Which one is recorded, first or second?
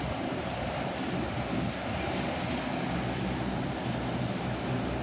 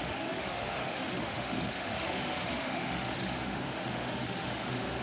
first